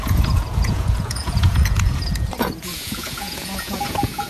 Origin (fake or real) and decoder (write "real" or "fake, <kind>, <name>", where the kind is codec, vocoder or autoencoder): fake, vocoder, Vocos